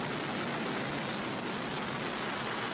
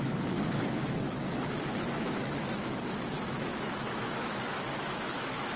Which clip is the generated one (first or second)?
second